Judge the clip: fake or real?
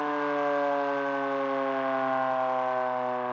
real